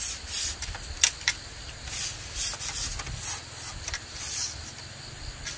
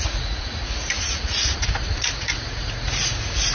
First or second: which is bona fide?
first